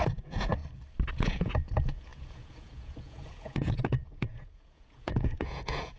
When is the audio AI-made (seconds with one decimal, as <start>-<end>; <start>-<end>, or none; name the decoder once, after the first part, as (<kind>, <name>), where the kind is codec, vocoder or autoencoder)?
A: 0.0-0.6 (vocoder, Vocos); 1.1-6.0